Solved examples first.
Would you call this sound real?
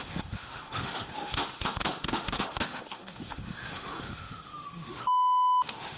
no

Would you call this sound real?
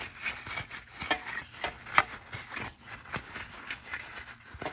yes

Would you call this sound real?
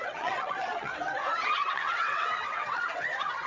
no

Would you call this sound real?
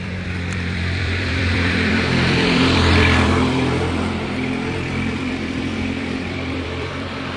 no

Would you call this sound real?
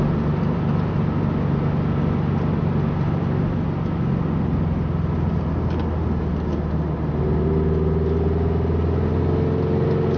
yes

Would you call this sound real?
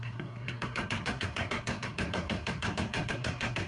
no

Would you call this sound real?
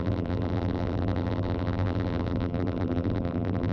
no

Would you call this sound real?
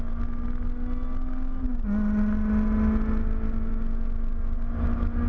yes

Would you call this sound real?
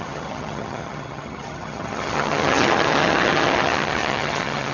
no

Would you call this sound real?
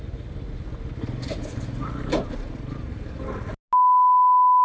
yes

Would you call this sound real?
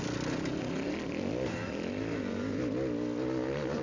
yes